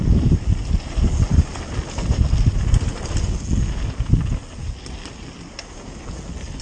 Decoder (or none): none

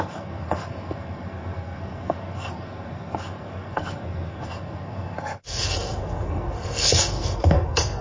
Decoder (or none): codec, SNAC